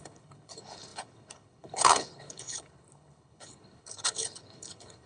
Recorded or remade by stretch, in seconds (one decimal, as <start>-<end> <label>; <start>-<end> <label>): 0.0-5.1 remade